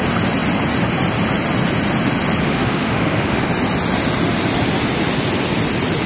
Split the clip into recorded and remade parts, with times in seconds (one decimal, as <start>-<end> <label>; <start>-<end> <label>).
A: 0.0-2.4 recorded; 2.4-3.5 remade; 3.5-6.1 recorded